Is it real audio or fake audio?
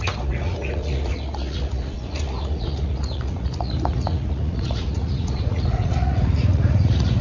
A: fake